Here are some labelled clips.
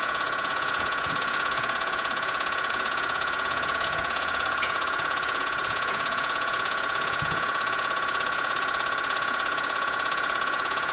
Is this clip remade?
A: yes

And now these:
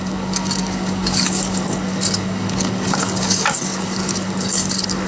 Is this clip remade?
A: yes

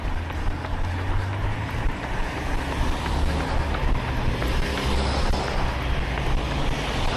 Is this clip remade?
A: no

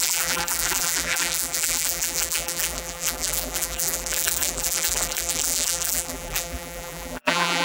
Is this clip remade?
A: yes